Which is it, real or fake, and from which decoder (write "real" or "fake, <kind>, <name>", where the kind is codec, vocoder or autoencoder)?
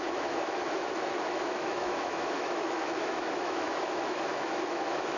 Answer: fake, autoencoder, DAC-VAE